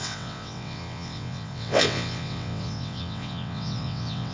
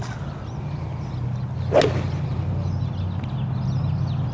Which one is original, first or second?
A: second